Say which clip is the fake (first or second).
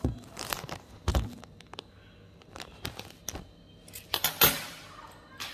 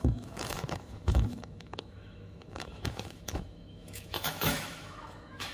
second